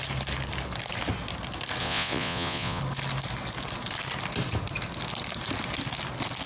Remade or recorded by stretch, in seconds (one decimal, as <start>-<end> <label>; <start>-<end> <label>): 0.0-1.8 recorded; 1.8-2.8 remade; 2.8-6.5 recorded